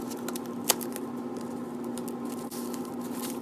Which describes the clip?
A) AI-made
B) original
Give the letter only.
B